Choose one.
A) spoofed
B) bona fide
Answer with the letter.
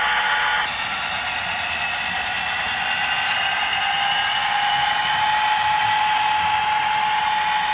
B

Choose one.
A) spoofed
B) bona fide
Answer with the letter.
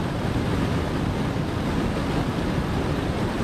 B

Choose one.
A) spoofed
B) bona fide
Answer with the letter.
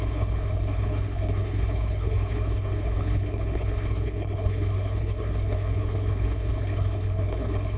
A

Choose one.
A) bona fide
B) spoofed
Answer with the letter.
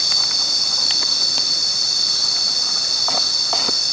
A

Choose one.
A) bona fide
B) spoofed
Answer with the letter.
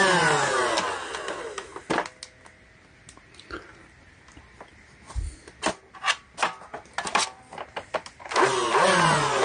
A